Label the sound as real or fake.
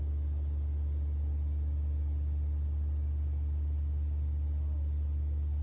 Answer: real